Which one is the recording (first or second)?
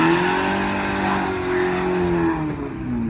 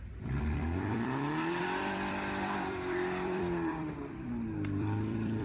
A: first